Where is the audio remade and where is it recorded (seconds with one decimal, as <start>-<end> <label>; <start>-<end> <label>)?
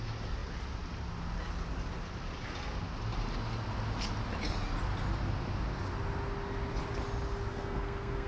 0.0-7.5 recorded; 7.5-8.3 remade